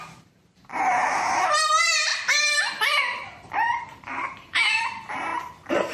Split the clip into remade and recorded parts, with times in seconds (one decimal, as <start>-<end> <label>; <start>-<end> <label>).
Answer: 0.0-2.1 remade; 2.1-2.7 recorded; 2.7-5.3 remade; 5.3-5.9 recorded

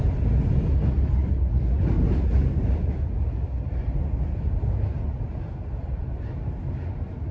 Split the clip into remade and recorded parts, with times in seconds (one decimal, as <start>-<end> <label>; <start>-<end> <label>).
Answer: 0.0-7.3 recorded

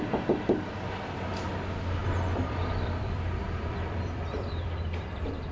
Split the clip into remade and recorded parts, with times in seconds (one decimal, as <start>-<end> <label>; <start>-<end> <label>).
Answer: 0.0-2.0 recorded; 2.0-5.5 remade

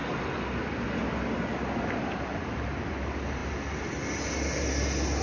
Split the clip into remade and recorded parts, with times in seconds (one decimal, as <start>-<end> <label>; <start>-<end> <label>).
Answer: 0.0-5.2 recorded

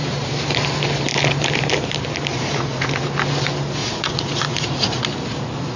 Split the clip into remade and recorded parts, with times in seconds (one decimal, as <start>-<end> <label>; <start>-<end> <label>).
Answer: 0.0-2.3 recorded; 2.3-2.9 remade; 2.9-3.8 recorded; 3.8-5.0 remade; 5.0-5.8 recorded

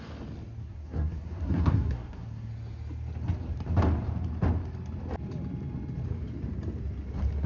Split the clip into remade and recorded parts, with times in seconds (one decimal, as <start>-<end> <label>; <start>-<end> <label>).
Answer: 0.0-0.6 recorded; 0.6-2.5 remade; 2.5-7.5 recorded

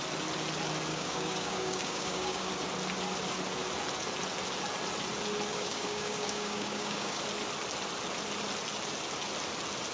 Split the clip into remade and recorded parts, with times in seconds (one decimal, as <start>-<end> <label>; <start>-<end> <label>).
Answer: 0.0-0.9 recorded; 0.9-2.5 remade; 2.5-5.5 recorded; 5.5-7.2 remade; 7.2-9.9 recorded